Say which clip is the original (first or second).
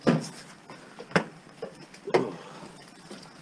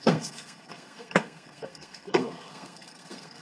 first